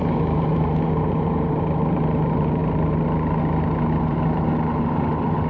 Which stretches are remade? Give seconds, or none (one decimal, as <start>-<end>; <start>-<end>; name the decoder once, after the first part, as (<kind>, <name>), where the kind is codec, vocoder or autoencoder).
0.0-2.6 (vocoder, BigVGAN v2); 3.9-5.5